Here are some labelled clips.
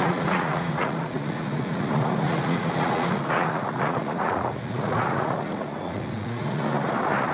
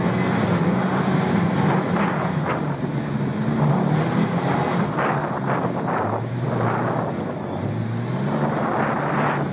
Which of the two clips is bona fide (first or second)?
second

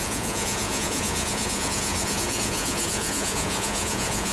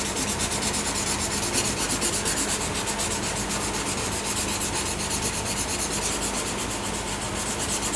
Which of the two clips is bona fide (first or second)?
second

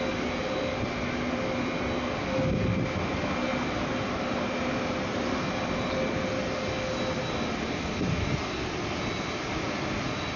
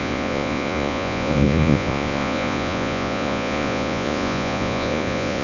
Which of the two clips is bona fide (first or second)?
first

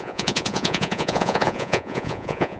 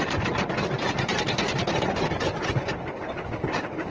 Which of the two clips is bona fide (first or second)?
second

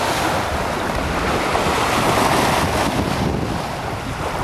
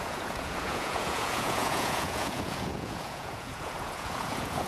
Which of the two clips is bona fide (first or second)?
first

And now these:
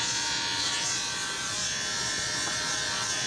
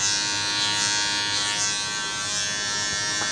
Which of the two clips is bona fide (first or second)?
second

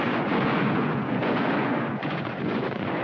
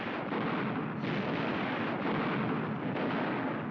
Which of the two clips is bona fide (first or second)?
second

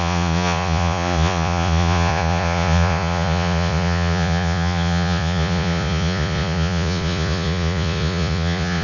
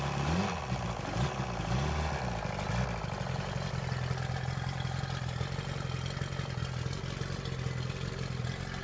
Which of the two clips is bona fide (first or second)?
second